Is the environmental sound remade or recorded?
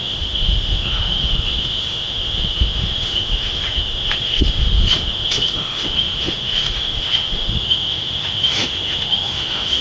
remade